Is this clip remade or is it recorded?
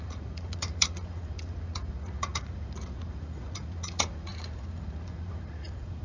remade